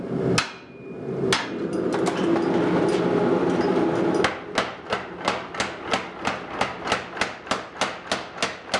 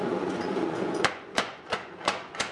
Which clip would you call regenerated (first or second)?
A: second